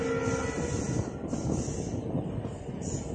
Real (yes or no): yes